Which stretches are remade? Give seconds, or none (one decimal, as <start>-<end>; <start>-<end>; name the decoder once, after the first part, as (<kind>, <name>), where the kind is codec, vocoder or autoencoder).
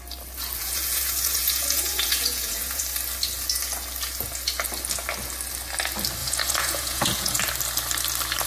0.6-2.8 (vocoder, Vocos); 6.2-7.4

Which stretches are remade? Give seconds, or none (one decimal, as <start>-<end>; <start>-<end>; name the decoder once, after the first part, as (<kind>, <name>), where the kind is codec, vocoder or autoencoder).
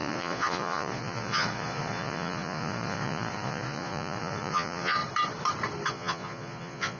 0.0-5.0 (vocoder, Vocos); 5.9-7.0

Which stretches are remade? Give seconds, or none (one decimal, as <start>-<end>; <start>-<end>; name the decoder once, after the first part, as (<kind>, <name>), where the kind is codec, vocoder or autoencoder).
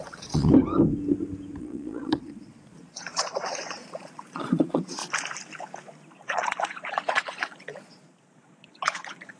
0.0-0.5 (vocoder, Vocos); 1.6-5.0; 6.1-9.4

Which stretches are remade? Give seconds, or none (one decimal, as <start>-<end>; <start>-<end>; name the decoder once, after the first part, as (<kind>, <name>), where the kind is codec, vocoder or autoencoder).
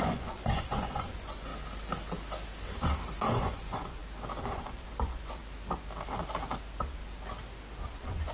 0.0-1.5 (vocoder, Vocos); 3.2-4.0; 4.5-5.4; 7.9-8.3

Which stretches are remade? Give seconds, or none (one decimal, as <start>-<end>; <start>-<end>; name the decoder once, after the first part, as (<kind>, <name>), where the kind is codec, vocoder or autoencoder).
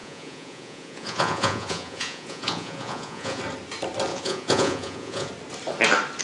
0.0-3.4 (vocoder, Vocos); 4.1-5.3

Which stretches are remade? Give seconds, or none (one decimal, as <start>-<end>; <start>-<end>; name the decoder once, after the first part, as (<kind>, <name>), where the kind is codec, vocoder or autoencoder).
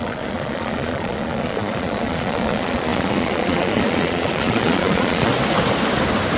0.0-5.3 (vocoder, Vocos)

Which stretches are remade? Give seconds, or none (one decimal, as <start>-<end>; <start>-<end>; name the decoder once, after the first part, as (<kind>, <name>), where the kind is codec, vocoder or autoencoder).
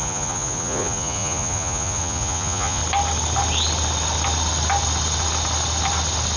0.0-2.8 (vocoder, Vocos)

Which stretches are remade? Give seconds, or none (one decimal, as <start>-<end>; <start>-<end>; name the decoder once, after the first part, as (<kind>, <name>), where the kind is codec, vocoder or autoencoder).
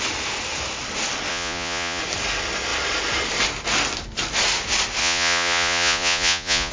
1.3-2.0 (vocoder, Vocos); 5.0-6.7